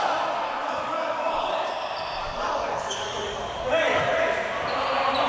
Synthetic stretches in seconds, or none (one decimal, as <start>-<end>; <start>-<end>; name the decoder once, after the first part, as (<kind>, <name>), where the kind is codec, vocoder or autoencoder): 0.6-1.7 (codec, DAC); 2.2-4.1